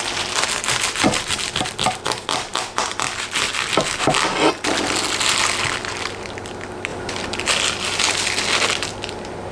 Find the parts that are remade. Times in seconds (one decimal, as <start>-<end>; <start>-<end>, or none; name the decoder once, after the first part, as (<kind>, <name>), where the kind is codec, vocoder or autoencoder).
none